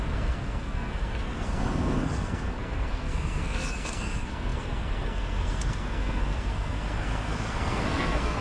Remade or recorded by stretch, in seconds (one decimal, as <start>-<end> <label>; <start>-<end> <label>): 0.0-8.4 remade